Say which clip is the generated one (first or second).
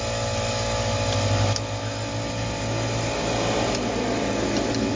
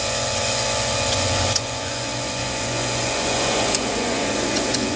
second